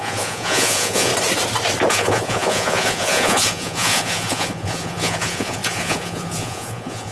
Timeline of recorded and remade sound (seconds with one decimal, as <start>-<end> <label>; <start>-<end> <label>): 0.0-1.1 remade; 1.1-1.9 recorded; 1.9-7.1 remade